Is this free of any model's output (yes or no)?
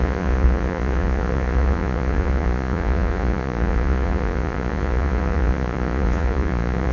no